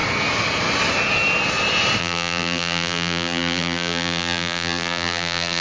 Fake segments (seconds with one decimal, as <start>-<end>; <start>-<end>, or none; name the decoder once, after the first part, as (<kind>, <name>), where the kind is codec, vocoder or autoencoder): 2.0-5.6 (vocoder, BigVGAN v2)